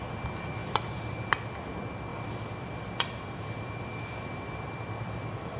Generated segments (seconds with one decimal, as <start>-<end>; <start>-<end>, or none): 0.6-1.3; 2.1-5.6